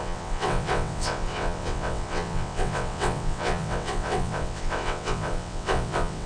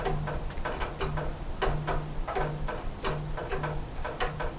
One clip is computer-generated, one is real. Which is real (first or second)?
second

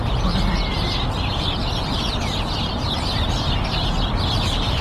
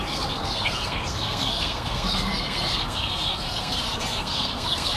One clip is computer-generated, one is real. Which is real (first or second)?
first